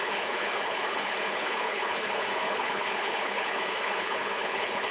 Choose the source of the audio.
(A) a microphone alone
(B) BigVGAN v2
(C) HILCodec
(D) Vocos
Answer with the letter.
C